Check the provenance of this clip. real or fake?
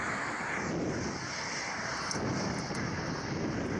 real